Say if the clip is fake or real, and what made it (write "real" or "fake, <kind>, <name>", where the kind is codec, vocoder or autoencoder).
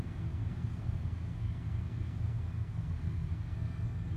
fake, codec, SNAC